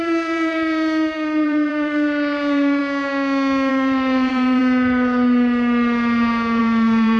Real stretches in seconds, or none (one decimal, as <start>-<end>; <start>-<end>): 2.8-3.7; 4.6-6.6